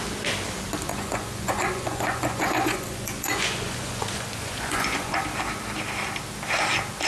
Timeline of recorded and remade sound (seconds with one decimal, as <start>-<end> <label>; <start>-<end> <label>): 0.0-0.9 recorded; 0.9-5.2 remade; 5.2-7.1 recorded